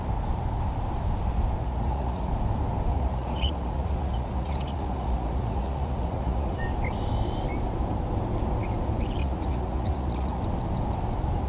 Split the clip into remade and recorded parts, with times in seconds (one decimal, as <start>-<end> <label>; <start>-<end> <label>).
0.0-1.6 recorded; 1.6-2.3 remade; 2.3-2.9 recorded; 2.9-6.6 remade; 6.6-9.2 recorded; 9.2-10.4 remade; 10.4-11.5 recorded